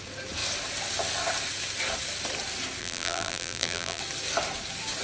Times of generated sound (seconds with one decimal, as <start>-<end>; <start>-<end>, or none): 2.8-4.0

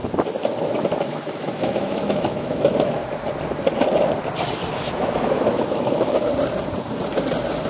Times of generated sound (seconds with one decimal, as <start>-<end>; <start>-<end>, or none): 1.1-3.0; 4.7-6.3

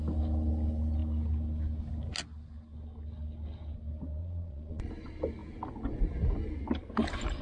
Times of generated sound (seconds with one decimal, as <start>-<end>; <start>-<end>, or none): 4.2-4.9

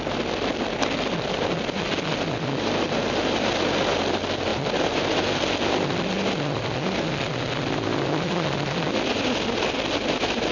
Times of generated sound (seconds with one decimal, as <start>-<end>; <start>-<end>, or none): none

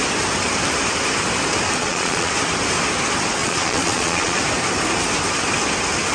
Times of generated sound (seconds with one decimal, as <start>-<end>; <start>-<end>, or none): 1.8-2.3; 3.4-4.4